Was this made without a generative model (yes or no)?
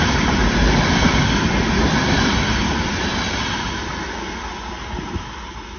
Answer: yes